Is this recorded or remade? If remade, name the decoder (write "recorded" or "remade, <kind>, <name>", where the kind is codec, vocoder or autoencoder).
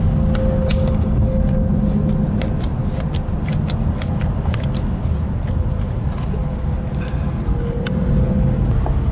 recorded